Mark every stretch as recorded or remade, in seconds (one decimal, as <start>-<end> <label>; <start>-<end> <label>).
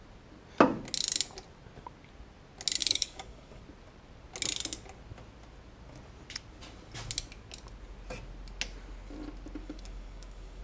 0.0-2.8 recorded; 2.8-3.6 remade; 3.6-9.6 recorded; 9.6-10.6 remade